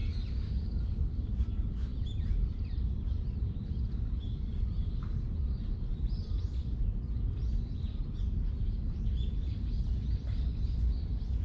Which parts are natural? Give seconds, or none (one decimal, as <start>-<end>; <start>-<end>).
0.0-11.4